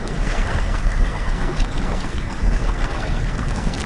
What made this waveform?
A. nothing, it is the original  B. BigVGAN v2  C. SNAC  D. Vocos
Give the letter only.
C